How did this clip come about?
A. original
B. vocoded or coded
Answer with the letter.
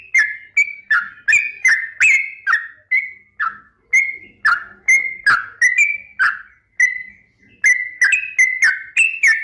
A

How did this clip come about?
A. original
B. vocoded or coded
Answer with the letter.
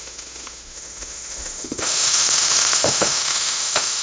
B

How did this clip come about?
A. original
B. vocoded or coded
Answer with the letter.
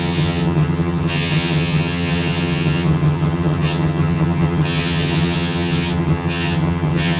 B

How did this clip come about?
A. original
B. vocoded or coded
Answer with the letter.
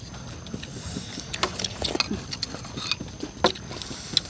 A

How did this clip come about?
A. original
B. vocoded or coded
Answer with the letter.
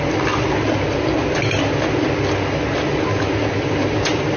A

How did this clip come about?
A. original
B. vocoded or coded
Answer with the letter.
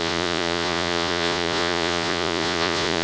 B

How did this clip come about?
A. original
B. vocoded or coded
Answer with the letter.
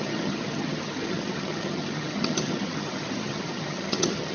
B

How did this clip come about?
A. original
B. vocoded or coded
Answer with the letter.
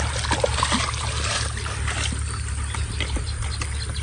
A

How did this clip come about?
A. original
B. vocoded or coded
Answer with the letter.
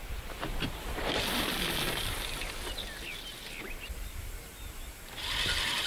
A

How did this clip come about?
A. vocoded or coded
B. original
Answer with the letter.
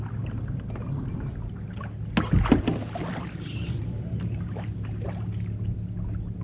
B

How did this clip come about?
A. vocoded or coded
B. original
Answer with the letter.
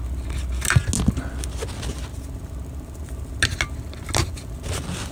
B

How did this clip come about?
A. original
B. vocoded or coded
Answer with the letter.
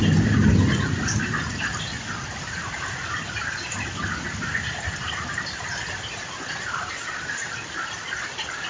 A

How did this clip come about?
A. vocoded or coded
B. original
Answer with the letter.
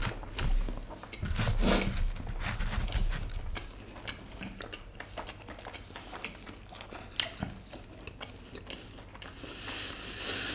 B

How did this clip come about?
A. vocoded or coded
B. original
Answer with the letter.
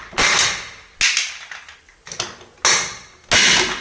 B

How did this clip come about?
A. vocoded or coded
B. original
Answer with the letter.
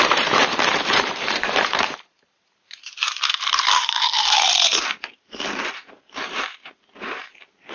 A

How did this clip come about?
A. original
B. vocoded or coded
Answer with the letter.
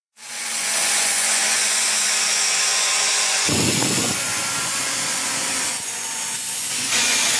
B